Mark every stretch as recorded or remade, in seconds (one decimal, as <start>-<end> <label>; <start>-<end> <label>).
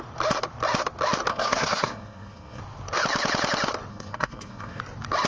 0.0-1.3 recorded; 1.3-2.6 remade; 2.6-3.9 recorded; 3.9-4.8 remade; 4.8-5.3 recorded